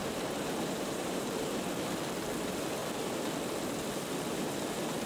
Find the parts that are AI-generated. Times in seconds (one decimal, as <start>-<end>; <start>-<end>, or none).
0.0-1.6